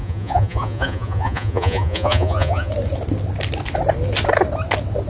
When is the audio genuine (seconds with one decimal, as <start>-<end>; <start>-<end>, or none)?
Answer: 2.7-5.1